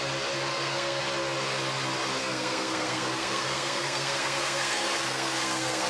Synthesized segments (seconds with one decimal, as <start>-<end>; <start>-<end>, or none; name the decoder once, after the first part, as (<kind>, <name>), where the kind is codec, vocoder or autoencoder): 0.5-1.0 (codec, SNAC); 2.2-5.9